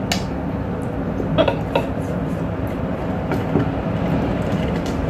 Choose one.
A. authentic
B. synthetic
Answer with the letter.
A